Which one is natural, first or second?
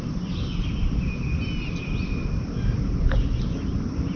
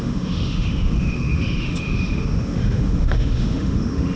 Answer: first